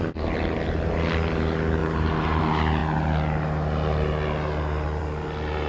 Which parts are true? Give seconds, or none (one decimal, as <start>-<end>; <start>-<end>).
0.0-1.8; 2.4-5.7